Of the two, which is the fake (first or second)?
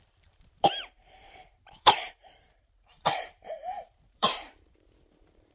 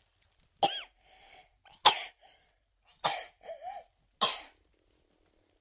first